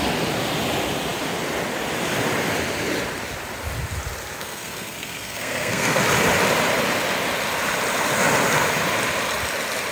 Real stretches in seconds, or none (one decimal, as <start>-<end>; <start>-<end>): 0.0-4.4; 6.0-9.9